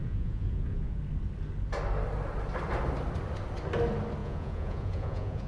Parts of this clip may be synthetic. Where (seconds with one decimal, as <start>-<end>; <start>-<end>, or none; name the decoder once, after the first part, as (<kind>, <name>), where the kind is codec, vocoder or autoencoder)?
0.0-1.0 (vocoder, Vocos); 4.2-5.5